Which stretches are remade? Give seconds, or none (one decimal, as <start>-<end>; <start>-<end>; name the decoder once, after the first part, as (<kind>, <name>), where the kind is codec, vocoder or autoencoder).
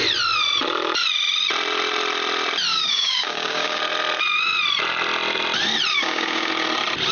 2.7-3.8 (codec, DAC); 5.9-6.5